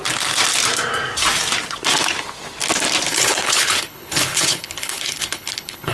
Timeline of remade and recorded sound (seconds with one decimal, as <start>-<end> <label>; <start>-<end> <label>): 0.0-3.1 recorded; 3.1-5.9 remade